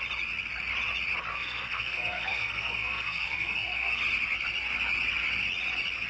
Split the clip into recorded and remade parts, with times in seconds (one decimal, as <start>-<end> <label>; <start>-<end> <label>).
0.0-1.3 recorded; 1.3-4.0 remade; 4.0-6.1 recorded